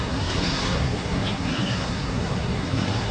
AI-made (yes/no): yes